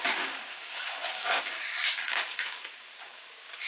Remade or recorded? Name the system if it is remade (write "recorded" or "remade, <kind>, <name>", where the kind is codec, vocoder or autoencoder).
remade, codec, DAC